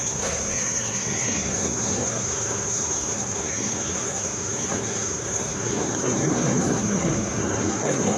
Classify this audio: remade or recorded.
remade